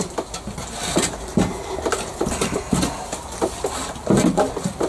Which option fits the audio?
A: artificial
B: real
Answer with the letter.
B